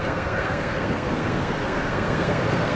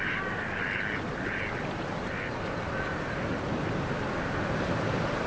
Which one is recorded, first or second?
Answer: second